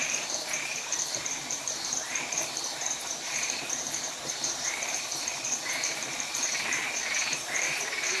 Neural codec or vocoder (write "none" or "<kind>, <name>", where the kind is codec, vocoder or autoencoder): vocoder, BigVGAN v2